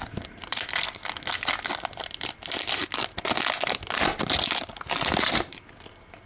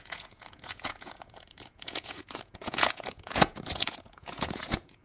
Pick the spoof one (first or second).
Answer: second